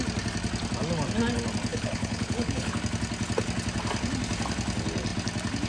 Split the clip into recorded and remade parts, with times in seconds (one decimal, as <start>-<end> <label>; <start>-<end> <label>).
0.0-1.7 recorded; 1.7-2.7 remade; 2.7-5.7 recorded